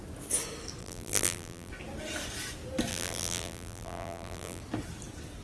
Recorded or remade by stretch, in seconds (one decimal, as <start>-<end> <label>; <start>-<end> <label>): 0.0-0.8 recorded; 0.8-1.7 remade; 1.7-2.9 recorded; 2.9-4.6 remade; 4.6-5.4 recorded